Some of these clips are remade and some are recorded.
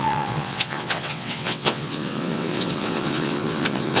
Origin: remade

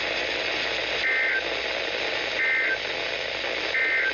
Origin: recorded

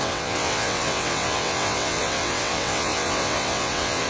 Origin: remade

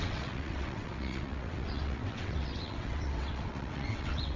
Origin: remade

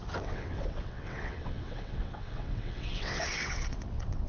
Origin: remade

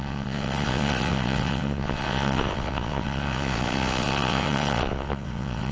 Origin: remade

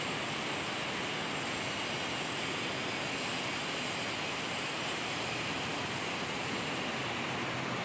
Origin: recorded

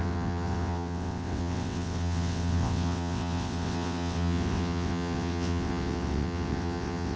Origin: remade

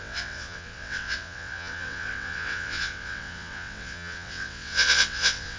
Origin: remade